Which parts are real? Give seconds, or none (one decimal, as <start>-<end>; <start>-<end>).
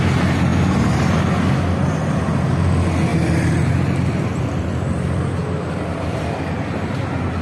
0.0-7.4